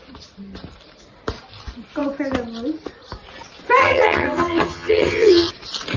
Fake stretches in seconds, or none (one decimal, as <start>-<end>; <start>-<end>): 3.8-5.5